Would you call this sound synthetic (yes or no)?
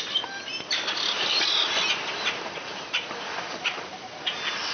no